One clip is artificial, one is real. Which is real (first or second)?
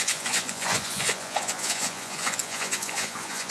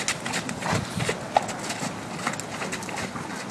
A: second